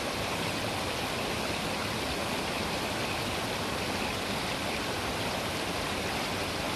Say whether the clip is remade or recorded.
recorded